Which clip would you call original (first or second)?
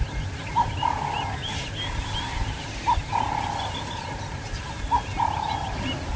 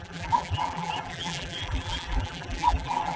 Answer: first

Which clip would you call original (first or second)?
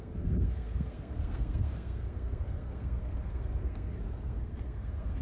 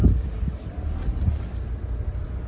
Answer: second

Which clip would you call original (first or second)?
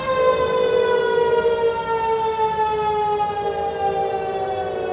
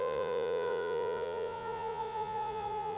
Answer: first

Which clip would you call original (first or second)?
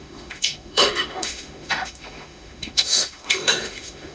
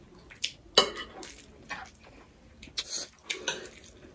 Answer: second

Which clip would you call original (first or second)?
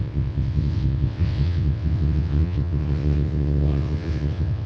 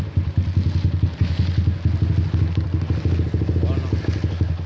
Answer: second